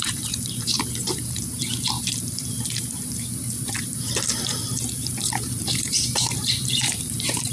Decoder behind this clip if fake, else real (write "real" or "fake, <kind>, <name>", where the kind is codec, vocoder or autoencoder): fake, vocoder, BigVGAN v2